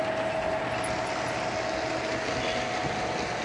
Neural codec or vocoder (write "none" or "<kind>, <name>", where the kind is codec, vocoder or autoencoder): none